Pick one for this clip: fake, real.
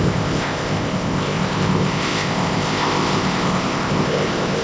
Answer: fake